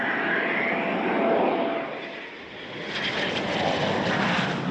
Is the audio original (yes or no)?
yes